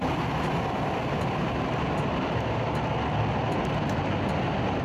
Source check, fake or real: real